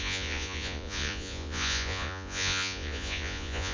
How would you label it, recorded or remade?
remade